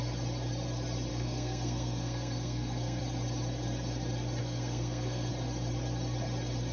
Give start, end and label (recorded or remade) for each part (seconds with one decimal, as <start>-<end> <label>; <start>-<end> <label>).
0.0-1.1 recorded; 1.1-3.0 remade; 3.0-4.4 recorded; 4.4-5.3 remade; 5.3-6.7 recorded